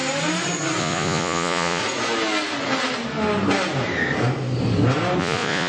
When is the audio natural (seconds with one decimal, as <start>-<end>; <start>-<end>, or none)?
0.0-0.8; 1.8-5.2